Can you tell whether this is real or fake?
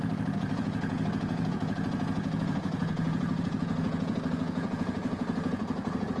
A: fake